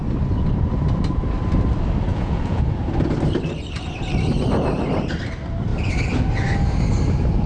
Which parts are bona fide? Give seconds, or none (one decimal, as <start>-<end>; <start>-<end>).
0.0-2.1; 2.6-7.5